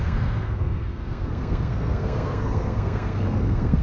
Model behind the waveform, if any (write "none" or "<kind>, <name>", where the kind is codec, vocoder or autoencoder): codec, SNAC